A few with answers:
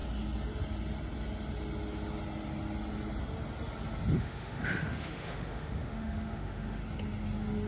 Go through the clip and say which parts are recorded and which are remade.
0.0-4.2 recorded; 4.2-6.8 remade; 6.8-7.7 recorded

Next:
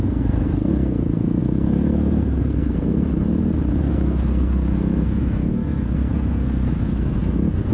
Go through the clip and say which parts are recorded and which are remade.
0.0-3.3 remade; 3.3-3.8 recorded; 3.8-7.7 remade

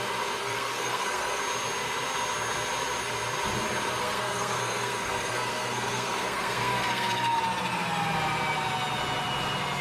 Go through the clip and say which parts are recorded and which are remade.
0.0-0.4 recorded; 0.4-1.4 remade; 1.4-4.0 recorded; 4.0-7.4 remade; 7.4-9.8 recorded

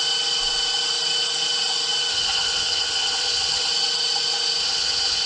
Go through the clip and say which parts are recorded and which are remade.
0.0-2.1 recorded; 2.1-3.7 remade; 3.7-4.6 recorded; 4.6-5.3 remade